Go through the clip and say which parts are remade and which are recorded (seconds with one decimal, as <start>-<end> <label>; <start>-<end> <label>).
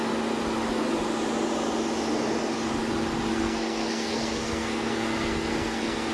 0.0-3.3 recorded; 3.3-6.1 remade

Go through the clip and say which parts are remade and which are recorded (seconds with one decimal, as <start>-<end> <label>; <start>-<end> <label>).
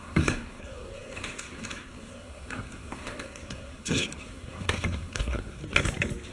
0.0-5.6 remade; 5.6-6.3 recorded